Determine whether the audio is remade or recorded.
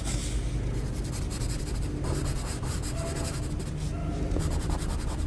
recorded